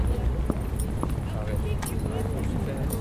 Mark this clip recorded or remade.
recorded